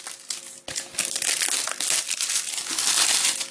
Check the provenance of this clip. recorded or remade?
recorded